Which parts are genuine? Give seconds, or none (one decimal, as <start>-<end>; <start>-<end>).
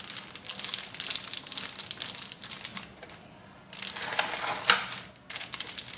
0.0-6.0